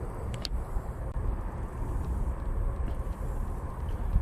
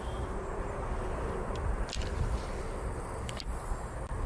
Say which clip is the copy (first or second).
first